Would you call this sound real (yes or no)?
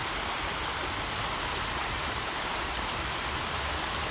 yes